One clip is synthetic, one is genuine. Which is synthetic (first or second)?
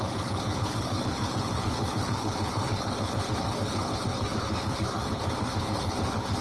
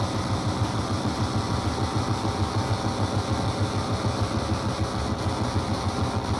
first